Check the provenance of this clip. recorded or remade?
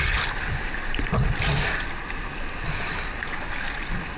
recorded